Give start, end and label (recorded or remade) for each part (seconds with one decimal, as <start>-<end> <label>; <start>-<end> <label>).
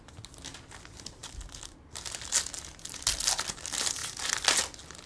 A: 0.0-5.1 recorded